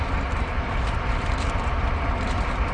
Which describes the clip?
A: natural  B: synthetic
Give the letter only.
A